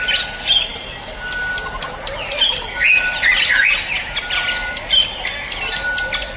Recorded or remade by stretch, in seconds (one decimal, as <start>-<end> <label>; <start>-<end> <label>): 0.0-6.4 recorded